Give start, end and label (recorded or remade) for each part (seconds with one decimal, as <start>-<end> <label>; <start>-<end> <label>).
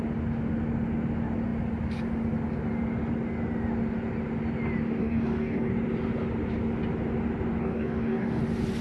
0.0-5.0 recorded; 5.0-5.7 remade; 5.7-7.6 recorded; 7.6-8.4 remade; 8.4-8.8 recorded